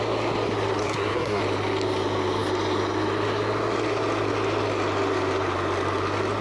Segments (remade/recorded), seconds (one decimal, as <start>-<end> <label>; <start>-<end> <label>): 0.0-0.8 recorded; 0.8-1.4 remade; 1.4-6.4 recorded